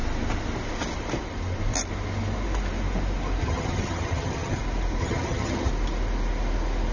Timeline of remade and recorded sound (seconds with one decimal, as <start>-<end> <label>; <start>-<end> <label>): 0.0-3.4 recorded; 3.4-4.6 remade; 4.6-5.0 recorded; 5.0-5.7 remade; 5.7-6.9 recorded